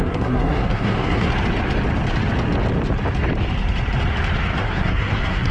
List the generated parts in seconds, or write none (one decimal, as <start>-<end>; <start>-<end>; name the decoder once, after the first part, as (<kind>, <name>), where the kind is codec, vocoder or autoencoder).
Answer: 0.0-1.3 (codec, SNAC); 4.6-5.5